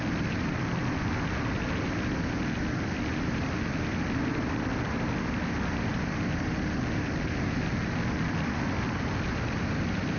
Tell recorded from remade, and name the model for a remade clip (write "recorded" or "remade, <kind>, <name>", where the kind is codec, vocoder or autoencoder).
recorded